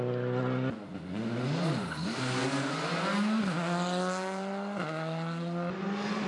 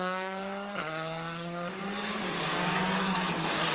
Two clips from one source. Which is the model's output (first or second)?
second